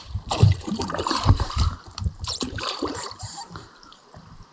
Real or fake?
fake